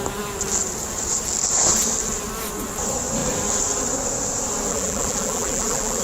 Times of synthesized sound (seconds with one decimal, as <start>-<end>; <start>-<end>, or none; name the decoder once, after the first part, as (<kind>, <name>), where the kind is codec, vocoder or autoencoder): 4.7-6.0 (vocoder, BigVGAN v2)